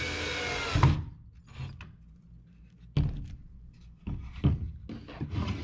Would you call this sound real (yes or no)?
yes